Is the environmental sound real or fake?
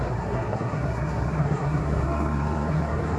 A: fake